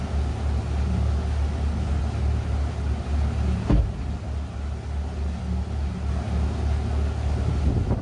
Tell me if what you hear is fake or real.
real